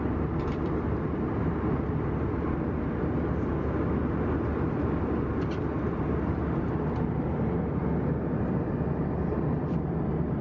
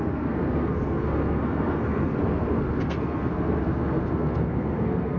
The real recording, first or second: first